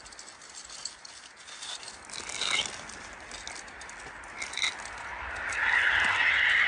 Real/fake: real